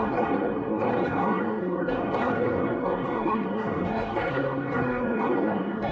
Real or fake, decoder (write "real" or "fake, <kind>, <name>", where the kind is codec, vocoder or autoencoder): fake, codec, SNAC